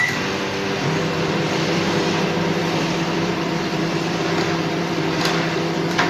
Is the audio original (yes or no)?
no